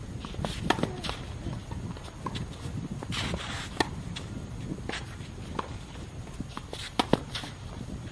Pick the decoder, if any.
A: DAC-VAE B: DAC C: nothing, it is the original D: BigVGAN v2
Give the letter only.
C